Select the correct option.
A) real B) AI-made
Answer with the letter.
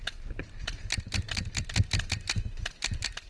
A